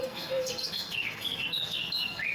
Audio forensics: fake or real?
fake